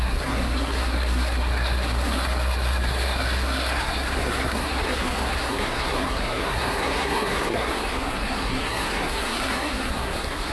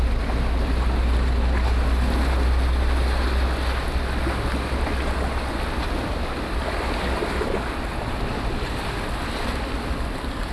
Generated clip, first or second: first